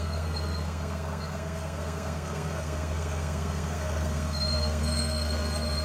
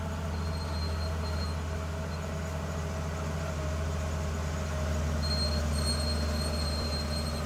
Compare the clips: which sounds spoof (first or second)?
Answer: first